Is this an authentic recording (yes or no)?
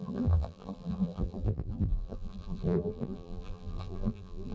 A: no